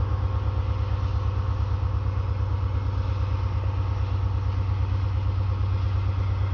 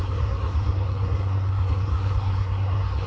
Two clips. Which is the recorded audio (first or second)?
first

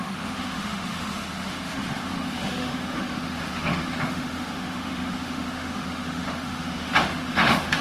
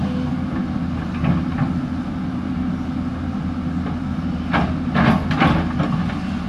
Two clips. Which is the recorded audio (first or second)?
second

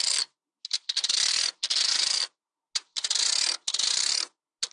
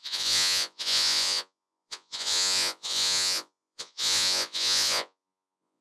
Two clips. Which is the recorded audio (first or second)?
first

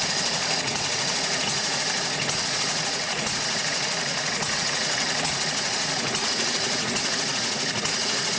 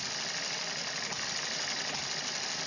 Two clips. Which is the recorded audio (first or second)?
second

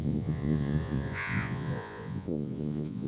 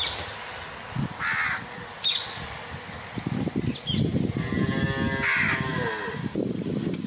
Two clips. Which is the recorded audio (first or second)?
second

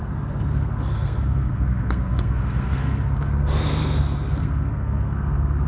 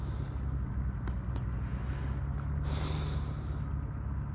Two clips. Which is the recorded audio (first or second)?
second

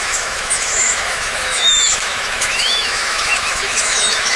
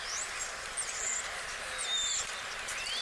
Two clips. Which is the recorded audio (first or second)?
second